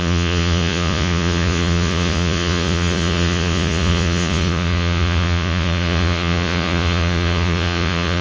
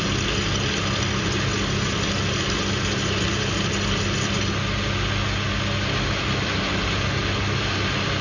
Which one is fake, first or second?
first